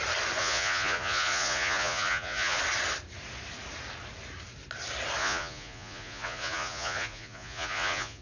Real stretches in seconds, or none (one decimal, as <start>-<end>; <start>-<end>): 0.0-0.4; 2.6-5.2